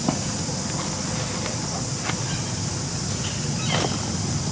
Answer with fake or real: real